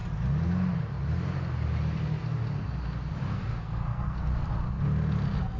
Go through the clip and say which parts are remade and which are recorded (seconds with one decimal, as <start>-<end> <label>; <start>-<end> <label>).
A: 0.0-3.3 recorded; 3.3-4.3 remade; 4.3-5.6 recorded